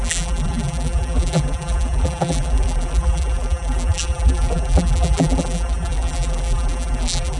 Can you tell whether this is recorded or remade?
remade